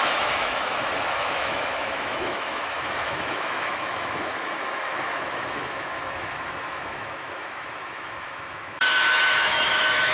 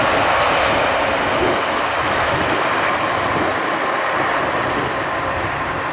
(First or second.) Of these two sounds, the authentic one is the second